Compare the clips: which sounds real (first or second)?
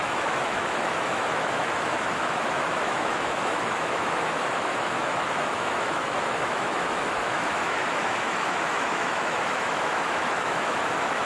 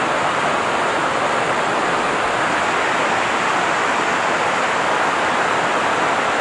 second